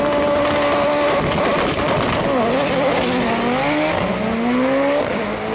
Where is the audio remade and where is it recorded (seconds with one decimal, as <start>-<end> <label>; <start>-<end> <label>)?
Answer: 0.0-5.5 recorded